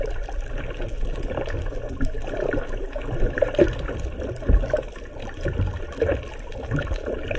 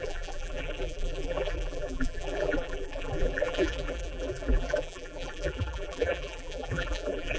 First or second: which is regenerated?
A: second